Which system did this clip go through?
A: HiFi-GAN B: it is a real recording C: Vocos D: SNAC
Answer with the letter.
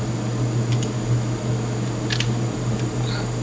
B